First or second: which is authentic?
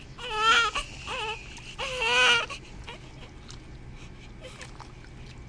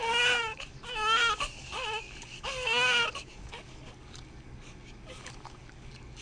first